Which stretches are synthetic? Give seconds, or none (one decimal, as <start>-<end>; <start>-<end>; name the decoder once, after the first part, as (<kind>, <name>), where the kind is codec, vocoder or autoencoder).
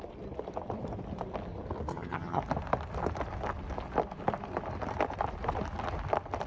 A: 1.9-2.4 (vocoder, HiFi-GAN)